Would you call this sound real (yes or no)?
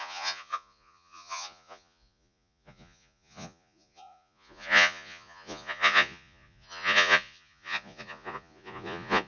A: no